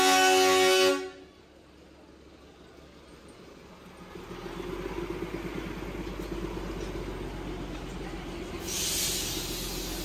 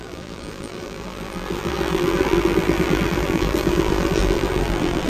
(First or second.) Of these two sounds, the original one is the first